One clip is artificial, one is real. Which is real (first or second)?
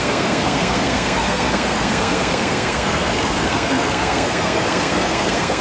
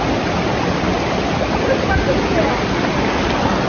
second